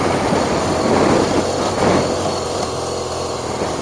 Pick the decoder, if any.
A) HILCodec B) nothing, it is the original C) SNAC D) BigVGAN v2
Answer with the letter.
B